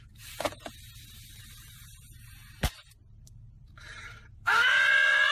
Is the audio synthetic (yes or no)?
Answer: yes